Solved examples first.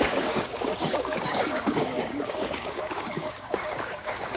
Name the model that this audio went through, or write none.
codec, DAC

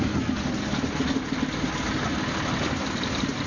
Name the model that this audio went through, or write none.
none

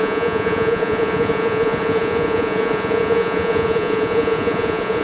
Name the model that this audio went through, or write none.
vocoder, Vocos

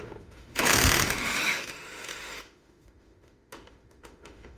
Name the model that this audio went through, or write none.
autoencoder, DAC-VAE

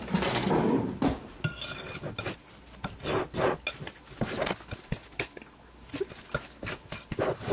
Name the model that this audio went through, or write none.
none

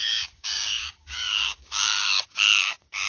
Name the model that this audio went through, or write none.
codec, DAC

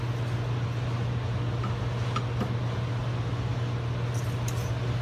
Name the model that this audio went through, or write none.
none